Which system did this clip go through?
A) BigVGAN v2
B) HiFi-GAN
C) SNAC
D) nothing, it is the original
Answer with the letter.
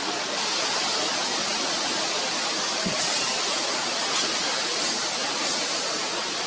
D